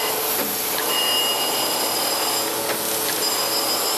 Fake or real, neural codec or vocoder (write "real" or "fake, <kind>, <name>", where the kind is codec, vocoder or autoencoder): real